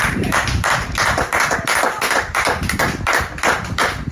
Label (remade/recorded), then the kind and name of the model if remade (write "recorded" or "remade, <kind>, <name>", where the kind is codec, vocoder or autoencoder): remade, vocoder, BigVGAN v2